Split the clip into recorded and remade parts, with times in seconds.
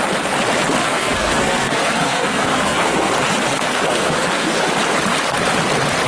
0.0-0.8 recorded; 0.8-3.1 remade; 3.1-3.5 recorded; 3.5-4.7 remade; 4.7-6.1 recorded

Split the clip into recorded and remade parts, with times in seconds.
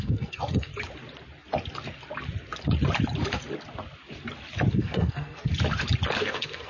0.0-0.7 remade; 0.7-4.7 recorded; 4.7-5.5 remade; 5.5-6.1 recorded; 6.1-6.7 remade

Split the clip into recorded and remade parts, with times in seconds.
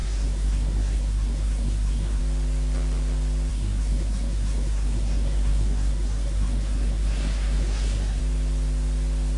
0.0-2.2 remade; 2.2-3.5 recorded; 3.5-8.2 remade; 8.2-9.4 recorded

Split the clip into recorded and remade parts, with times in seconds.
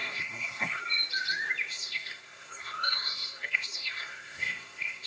0.0-0.8 remade; 0.8-1.7 recorded; 1.7-5.1 remade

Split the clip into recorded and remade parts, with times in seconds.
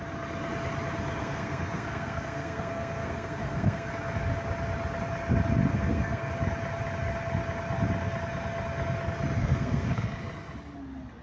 0.0-1.2 recorded; 1.2-3.9 remade; 3.9-5.7 recorded; 5.7-6.3 remade; 6.3-9.4 recorded; 9.4-10.2 remade; 10.2-11.2 recorded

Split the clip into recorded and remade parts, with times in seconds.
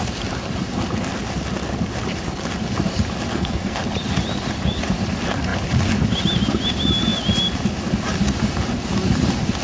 0.0-3.3 recorded; 3.3-3.8 remade; 3.8-9.6 recorded